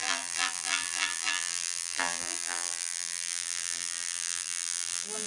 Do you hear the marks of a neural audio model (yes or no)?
yes